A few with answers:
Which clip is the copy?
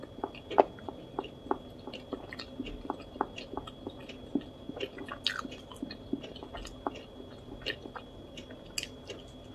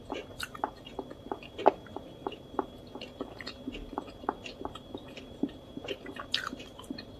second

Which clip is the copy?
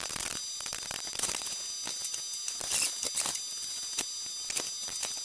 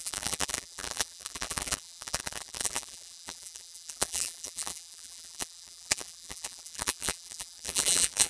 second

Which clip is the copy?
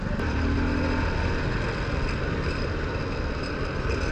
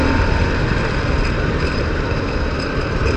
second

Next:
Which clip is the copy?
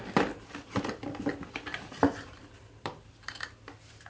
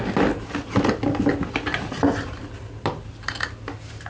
first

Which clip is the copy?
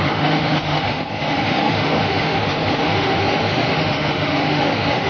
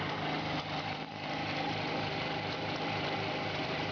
first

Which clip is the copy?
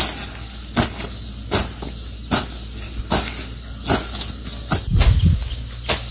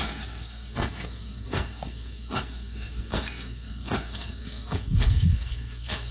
second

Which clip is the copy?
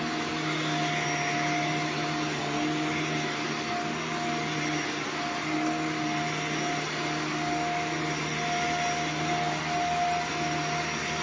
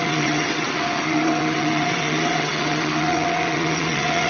second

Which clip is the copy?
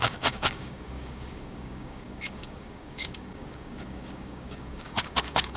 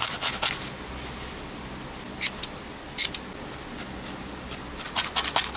first